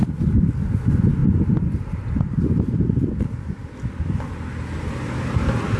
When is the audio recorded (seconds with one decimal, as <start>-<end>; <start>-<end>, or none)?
0.0-5.8